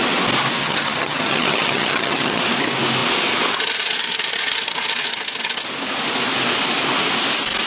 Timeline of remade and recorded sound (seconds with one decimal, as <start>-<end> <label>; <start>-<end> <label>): 0.0-0.6 recorded; 0.6-2.4 remade; 2.4-7.7 recorded